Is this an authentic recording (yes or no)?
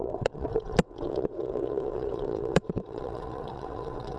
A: no